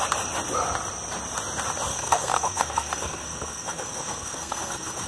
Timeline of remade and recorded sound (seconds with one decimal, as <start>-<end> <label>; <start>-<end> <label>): 0.0-1.9 recorded; 1.9-5.1 remade